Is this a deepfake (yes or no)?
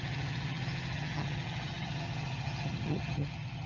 yes